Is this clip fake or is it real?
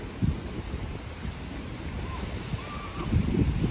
real